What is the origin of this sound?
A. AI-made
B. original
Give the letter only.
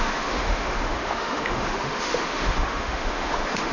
A